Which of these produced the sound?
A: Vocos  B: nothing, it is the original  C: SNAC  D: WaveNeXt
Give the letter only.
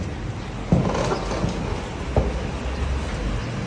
B